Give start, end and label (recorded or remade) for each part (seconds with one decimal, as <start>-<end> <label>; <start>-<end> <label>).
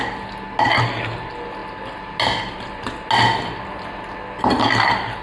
0.0-5.2 recorded